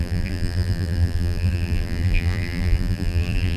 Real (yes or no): no